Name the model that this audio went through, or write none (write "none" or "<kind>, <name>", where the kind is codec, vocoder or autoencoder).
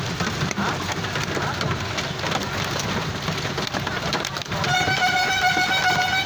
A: vocoder, BigVGAN v2